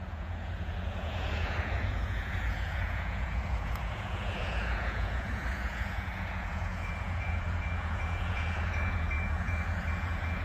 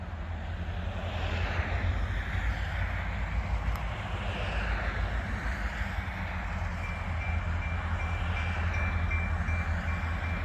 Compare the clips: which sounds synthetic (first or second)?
first